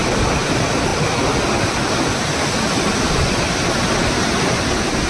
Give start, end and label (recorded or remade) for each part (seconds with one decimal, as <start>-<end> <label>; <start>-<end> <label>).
0.0-5.1 recorded